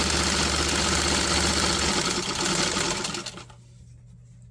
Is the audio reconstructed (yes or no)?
no